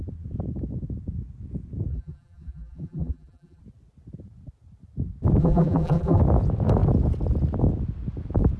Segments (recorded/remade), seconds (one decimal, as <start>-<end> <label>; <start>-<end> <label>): 0.0-1.9 recorded; 1.9-3.6 remade; 3.6-5.4 recorded; 5.4-6.2 remade; 6.2-8.6 recorded